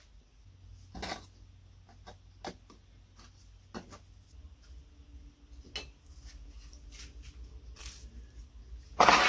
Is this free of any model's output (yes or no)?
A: yes